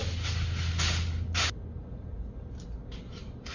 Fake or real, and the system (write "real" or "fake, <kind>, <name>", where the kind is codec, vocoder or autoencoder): real